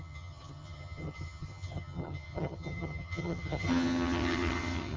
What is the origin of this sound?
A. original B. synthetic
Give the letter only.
B